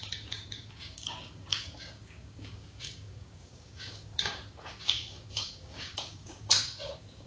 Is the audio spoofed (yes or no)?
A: yes